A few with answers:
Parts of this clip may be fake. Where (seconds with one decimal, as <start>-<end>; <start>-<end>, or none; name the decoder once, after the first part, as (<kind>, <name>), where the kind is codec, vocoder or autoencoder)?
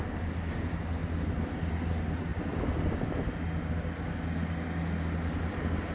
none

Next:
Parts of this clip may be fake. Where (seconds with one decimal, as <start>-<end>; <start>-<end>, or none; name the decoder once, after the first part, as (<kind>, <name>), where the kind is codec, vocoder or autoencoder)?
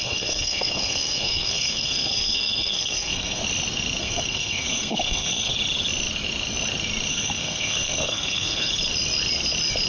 0.0-3.4 (codec, SNAC); 4.0-5.5; 7.1-8.7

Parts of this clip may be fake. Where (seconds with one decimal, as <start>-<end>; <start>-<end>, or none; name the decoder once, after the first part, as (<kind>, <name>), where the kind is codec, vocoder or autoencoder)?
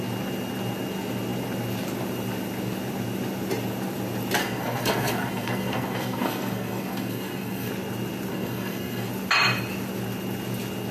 4.4-7.7 (codec, SNAC); 8.3-9.1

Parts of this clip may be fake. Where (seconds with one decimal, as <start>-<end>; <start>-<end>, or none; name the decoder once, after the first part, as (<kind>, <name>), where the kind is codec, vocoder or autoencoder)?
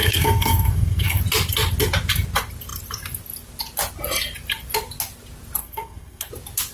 0.0-1.2 (codec, SNAC); 5.6-6.3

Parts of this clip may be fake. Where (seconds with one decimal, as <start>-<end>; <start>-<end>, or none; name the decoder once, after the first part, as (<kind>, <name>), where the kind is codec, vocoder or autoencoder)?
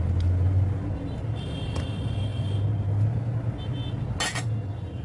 none